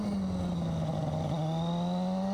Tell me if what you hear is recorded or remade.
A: recorded